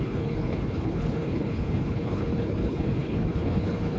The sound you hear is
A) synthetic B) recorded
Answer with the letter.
A